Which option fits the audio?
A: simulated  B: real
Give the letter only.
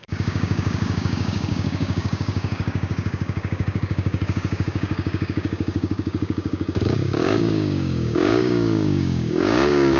A